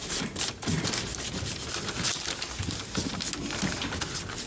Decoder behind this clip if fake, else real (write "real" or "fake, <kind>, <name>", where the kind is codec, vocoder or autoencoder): real